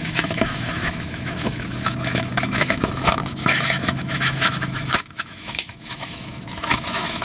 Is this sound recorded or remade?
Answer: remade